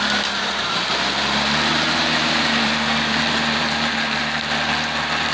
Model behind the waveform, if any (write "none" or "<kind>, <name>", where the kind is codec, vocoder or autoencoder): vocoder, BigVGAN v2